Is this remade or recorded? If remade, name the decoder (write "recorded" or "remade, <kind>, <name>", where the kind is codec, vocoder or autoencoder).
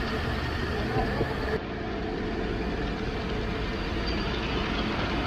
recorded